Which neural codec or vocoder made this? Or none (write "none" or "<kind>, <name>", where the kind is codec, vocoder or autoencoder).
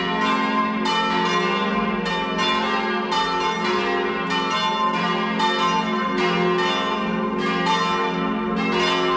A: none